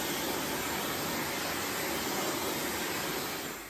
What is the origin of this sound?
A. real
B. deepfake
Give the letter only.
A